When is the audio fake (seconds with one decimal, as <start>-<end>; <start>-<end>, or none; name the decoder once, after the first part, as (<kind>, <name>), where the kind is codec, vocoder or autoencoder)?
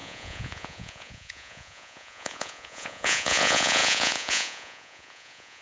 0.0-5.6 (vocoder, Vocos)